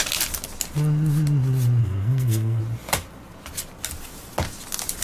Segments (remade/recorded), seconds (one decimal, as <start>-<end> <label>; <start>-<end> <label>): 0.0-1.8 recorded; 1.8-2.6 remade; 2.6-5.0 recorded